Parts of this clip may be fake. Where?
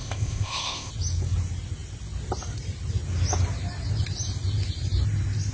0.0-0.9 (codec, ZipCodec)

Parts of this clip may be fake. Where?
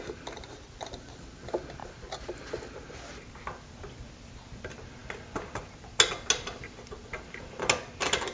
none